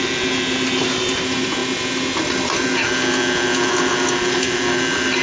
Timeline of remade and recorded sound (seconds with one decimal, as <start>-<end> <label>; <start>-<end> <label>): 0.0-5.2 recorded